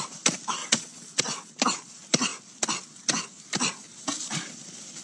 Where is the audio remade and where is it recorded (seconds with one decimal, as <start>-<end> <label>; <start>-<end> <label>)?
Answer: 0.0-0.6 recorded; 0.6-1.5 remade; 1.5-5.0 recorded

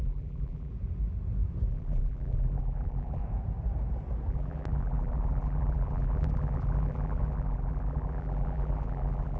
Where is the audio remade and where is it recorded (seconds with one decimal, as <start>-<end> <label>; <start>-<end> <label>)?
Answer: 0.0-0.7 remade; 0.7-1.7 recorded; 1.7-3.2 remade; 3.2-4.3 recorded; 4.3-9.4 remade

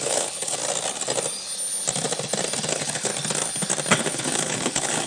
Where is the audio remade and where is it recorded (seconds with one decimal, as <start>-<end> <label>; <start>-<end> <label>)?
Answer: 0.0-0.6 remade; 0.6-2.7 recorded; 2.7-3.1 remade; 3.1-3.9 recorded; 3.9-5.1 remade

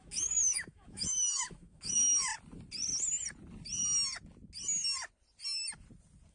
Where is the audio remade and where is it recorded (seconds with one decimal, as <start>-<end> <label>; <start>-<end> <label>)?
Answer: 0.0-2.3 remade; 2.3-6.3 recorded

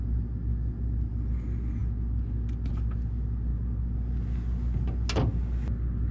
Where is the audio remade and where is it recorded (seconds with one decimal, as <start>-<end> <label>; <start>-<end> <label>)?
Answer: 0.0-6.1 recorded

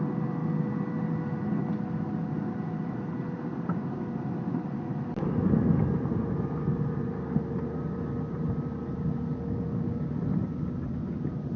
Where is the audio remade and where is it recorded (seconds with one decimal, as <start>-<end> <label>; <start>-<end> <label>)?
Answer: 0.0-11.6 recorded

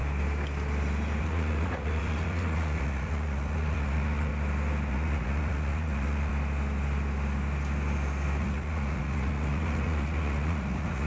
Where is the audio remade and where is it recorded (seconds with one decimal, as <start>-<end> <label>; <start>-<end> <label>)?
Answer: 0.0-1.2 recorded; 1.2-4.3 remade; 4.3-4.9 recorded; 4.9-6.3 remade; 6.3-8.4 recorded; 8.4-11.1 remade

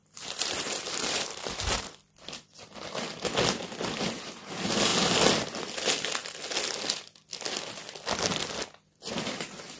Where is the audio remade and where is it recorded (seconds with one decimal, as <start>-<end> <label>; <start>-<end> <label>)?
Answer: 0.0-1.8 remade; 1.8-9.8 recorded